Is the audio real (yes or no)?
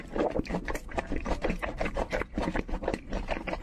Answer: no